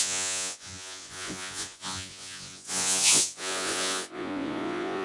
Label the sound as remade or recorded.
remade